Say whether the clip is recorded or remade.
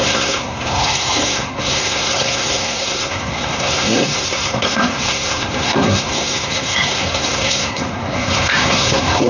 remade